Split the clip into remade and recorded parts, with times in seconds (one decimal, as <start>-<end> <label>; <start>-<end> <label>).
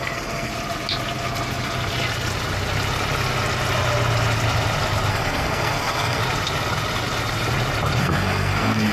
0.0-0.5 remade; 0.5-5.1 recorded; 5.1-6.2 remade; 6.2-8.0 recorded; 8.0-8.9 remade